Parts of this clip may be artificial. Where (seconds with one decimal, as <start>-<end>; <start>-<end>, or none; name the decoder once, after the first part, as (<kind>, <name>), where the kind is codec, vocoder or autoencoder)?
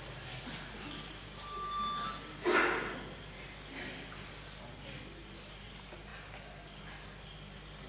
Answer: none